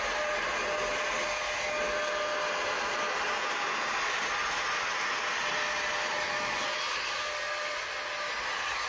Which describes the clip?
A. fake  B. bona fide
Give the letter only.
B